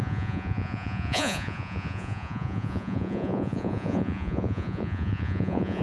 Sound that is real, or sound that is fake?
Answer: fake